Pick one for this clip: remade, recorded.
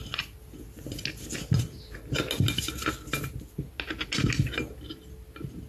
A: recorded